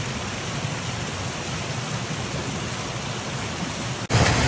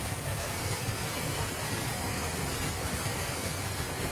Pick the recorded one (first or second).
first